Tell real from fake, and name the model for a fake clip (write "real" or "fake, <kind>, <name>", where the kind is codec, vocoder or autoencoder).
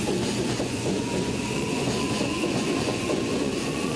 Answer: fake, vocoder, Vocos